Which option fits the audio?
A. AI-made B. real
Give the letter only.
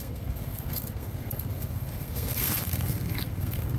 A